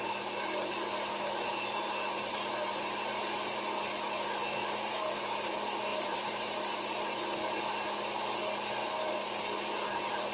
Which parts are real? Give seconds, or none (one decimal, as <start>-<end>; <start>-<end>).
0.0-5.9; 6.7-10.3